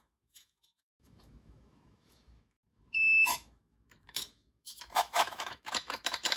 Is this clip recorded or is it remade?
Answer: remade